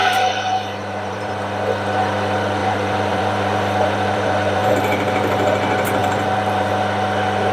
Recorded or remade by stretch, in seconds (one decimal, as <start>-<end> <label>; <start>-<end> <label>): 0.0-1.3 remade; 1.3-2.6 recorded; 2.6-4.7 remade; 4.7-6.0 recorded; 6.0-6.7 remade; 6.7-7.5 recorded